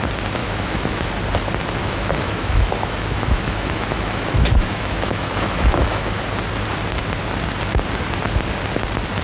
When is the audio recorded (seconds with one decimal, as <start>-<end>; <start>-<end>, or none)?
0.0-0.4; 1.1-1.8; 6.2-9.2